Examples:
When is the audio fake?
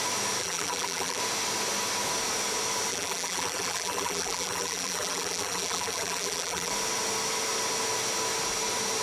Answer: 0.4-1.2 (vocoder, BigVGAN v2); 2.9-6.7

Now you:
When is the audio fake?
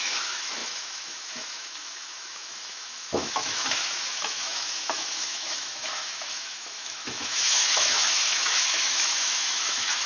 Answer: 0.0-10.1 (autoencoder, DAC-VAE)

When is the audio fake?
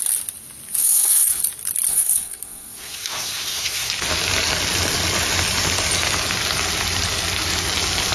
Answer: 0.8-1.4 (codec, SNAC); 1.9-3.9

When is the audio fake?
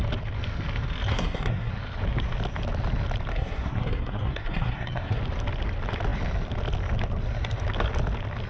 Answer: 1.1-1.7 (codec, SNAC); 3.3-5.2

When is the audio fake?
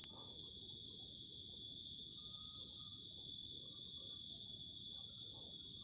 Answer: none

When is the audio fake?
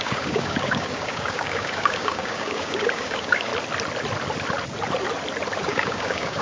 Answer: 0.0-3.5 (codec, DAC); 5.6-6.4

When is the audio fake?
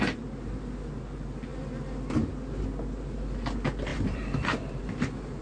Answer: 1.5-2.6 (vocoder, BigVGAN v2); 3.9-4.8